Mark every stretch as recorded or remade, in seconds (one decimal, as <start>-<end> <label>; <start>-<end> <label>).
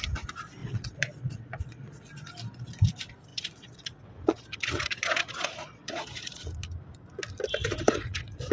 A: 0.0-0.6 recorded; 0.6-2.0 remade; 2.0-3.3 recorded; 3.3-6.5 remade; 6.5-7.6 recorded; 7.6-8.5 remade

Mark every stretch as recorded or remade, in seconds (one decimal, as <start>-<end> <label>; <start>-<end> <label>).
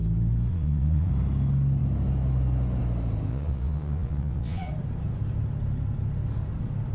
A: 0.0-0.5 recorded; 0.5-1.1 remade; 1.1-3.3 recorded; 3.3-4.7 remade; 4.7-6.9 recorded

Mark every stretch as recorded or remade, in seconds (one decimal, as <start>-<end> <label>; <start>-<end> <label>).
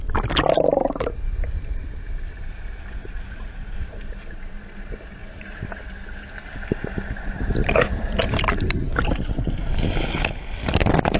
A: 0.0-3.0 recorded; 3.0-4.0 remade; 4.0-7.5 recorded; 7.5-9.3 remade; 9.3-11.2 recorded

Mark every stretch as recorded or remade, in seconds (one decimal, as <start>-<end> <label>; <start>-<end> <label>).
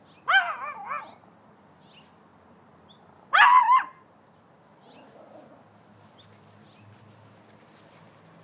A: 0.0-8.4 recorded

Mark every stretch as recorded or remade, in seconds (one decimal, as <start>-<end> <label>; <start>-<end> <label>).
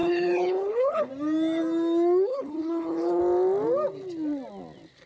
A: 0.0-1.1 remade; 1.1-2.3 recorded; 2.3-3.2 remade; 3.2-5.1 recorded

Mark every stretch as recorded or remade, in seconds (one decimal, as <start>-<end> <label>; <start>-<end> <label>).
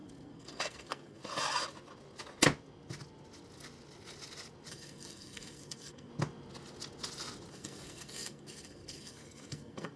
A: 0.0-1.2 remade; 1.2-4.7 recorded; 4.7-6.1 remade; 6.1-7.5 recorded; 7.5-10.0 remade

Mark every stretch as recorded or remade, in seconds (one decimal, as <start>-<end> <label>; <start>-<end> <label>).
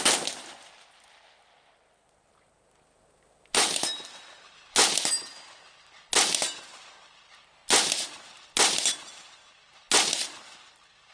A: 0.0-11.1 recorded